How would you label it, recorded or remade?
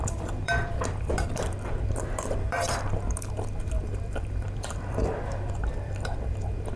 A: remade